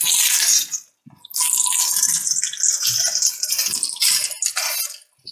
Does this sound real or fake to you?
real